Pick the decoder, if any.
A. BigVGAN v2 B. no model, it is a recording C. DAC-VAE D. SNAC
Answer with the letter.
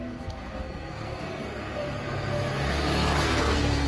D